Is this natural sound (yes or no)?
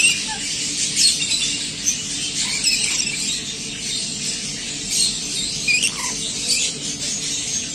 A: yes